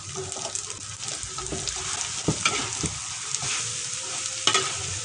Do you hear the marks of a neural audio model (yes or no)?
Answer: no